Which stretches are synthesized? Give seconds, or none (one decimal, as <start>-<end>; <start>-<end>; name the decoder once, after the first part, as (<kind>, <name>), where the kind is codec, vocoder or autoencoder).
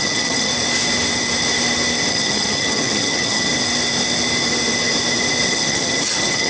0.0-0.5 (vocoder, HiFi-GAN); 2.1-3.5; 5.5-6.5